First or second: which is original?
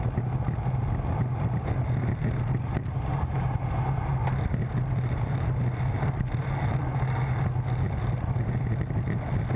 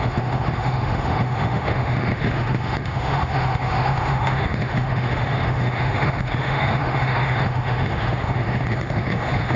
first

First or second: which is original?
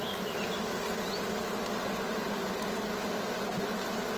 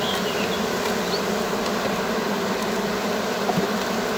first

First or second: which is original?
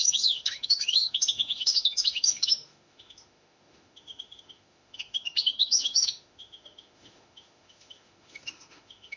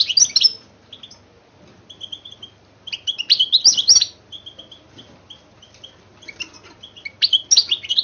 second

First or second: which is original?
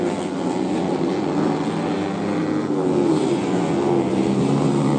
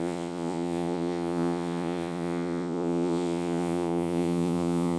first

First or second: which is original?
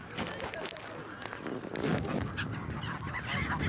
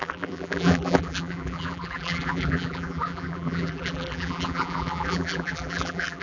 first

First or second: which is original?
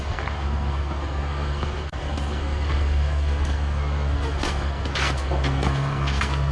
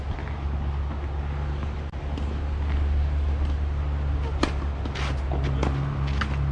second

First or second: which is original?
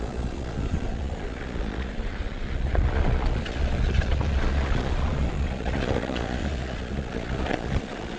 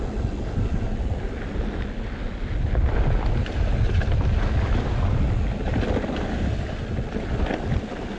second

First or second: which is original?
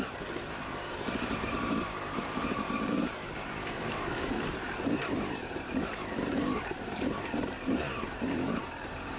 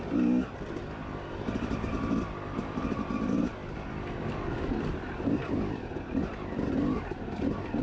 second